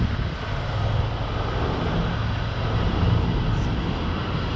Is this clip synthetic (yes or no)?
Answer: no